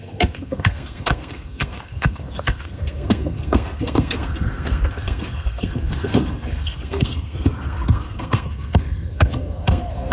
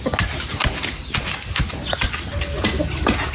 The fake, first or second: first